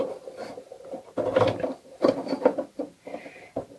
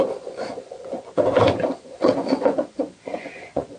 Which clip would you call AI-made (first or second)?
second